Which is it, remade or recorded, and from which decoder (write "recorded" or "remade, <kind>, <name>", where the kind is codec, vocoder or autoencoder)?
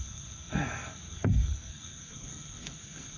remade, codec, SNAC